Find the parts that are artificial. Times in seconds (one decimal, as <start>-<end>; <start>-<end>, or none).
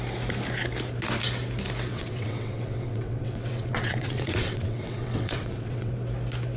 1.9-5.9